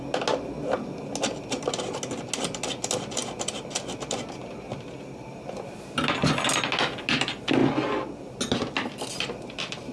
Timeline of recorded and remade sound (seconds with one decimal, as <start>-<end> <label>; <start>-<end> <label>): 0.0-9.9 recorded